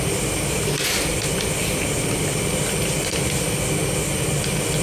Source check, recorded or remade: recorded